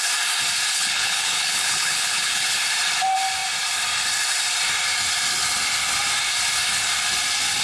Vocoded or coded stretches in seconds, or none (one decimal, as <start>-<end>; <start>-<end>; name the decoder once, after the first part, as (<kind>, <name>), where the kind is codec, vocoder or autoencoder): 0.7-2.6 (codec, HILCodec)